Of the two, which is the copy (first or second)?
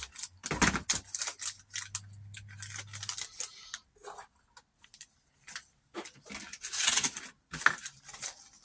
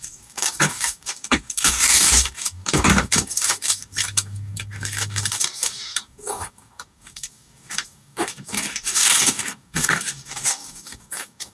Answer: second